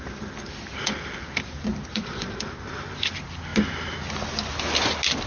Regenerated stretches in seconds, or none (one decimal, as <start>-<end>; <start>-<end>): 1.9-2.4